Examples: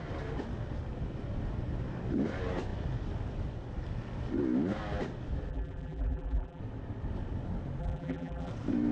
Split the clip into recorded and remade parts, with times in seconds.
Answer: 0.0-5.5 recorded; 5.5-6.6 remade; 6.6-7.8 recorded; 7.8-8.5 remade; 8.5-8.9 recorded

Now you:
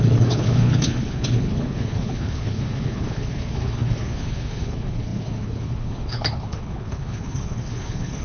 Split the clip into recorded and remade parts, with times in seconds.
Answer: 0.0-8.2 remade

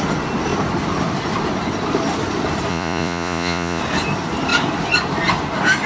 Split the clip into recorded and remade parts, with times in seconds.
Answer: 0.0-2.7 recorded; 2.7-3.8 remade; 3.8-5.9 recorded